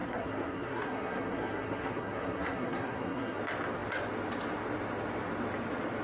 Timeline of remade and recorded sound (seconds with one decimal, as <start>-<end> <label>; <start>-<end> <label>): 0.0-3.4 remade; 3.4-6.0 recorded